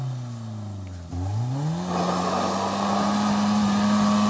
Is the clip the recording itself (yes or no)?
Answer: yes